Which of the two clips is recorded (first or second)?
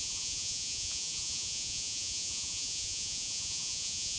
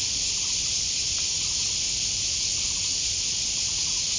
second